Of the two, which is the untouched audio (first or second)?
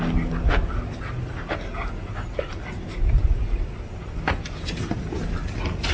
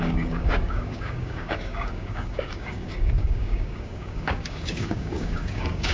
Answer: first